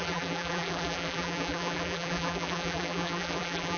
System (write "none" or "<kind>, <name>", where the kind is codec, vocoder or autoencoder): vocoder, BigVGAN v2